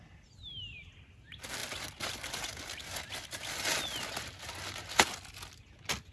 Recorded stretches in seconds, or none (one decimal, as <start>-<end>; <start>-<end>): 0.0-6.1